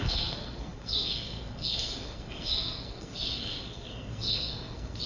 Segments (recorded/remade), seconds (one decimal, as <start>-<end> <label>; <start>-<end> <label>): 0.0-5.1 remade